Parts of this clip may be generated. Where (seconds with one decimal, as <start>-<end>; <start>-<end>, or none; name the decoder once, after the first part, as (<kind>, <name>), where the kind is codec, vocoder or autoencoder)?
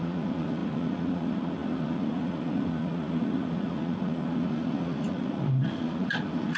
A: 0.0-6.6 (vocoder, Vocos)